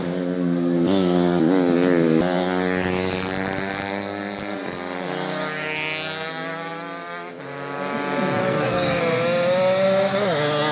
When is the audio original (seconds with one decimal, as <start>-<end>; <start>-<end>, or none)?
0.0-8.4; 9.0-10.7